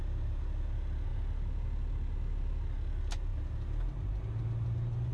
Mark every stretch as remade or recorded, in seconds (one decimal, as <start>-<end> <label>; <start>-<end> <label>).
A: 0.0-5.1 recorded